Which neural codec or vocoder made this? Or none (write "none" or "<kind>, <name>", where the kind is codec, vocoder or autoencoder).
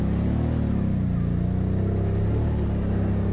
none